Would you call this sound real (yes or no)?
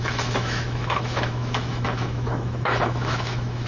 no